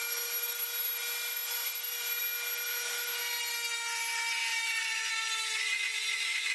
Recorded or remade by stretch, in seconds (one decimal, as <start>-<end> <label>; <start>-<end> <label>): 0.0-4.5 recorded; 4.5-5.1 remade; 5.1-6.5 recorded

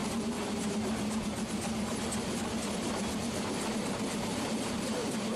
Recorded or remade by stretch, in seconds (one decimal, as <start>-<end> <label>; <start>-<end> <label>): 0.0-4.3 recorded; 4.3-5.4 remade

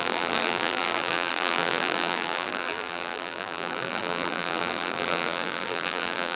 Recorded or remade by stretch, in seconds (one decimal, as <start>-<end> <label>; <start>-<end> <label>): 0.0-6.4 remade

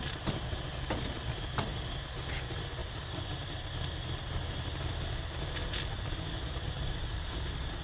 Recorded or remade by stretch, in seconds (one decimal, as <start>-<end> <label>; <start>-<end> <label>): 0.0-7.8 recorded

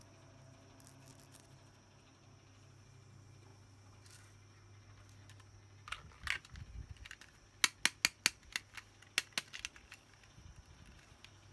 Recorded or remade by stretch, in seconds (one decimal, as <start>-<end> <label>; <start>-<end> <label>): 0.0-11.5 recorded

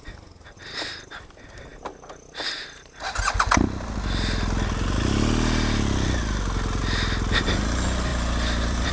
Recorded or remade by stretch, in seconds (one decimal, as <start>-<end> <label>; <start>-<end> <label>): 0.0-8.1 recorded; 8.1-8.9 remade